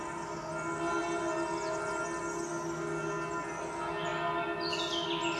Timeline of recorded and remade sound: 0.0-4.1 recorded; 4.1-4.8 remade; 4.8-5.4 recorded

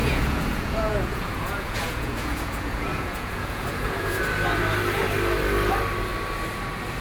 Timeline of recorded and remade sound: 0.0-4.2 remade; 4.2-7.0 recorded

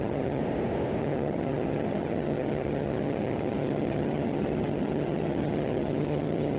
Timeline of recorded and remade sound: 0.0-0.4 remade; 0.4-1.0 recorded; 1.0-6.6 remade

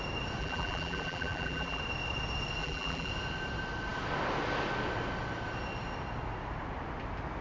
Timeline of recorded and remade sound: 0.0-0.4 recorded; 0.4-1.8 remade; 1.8-2.6 recorded; 2.6-3.1 remade; 3.1-7.4 recorded

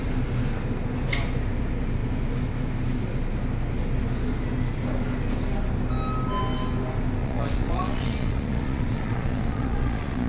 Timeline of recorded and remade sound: 0.0-7.2 recorded; 7.2-10.3 remade